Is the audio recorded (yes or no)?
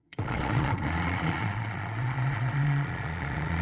no